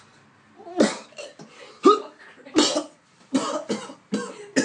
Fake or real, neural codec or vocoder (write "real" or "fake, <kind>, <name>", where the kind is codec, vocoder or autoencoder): real